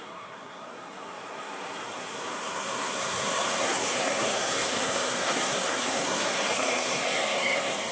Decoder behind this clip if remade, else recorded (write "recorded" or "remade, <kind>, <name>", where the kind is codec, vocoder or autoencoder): remade, codec, SNAC